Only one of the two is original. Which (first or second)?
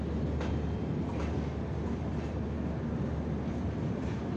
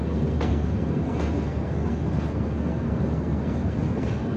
first